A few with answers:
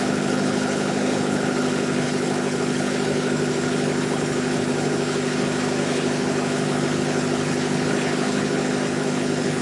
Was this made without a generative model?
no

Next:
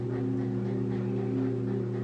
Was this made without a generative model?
yes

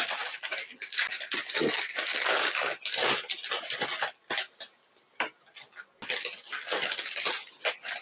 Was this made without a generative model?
yes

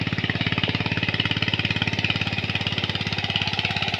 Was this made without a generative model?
yes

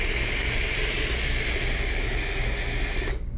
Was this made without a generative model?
yes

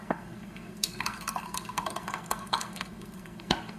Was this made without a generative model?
no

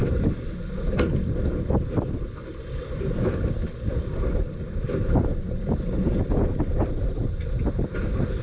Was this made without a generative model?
yes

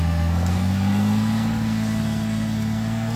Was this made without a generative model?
no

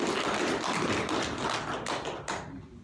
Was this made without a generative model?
yes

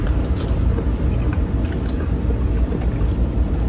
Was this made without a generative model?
yes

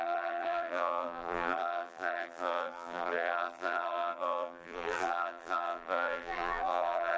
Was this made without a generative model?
no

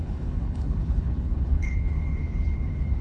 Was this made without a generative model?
no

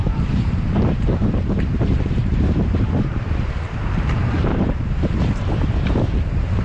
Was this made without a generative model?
no